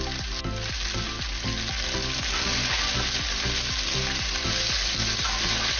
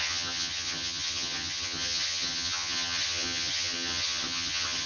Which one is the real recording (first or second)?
first